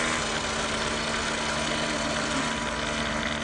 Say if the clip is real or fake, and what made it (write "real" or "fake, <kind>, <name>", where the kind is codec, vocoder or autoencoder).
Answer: real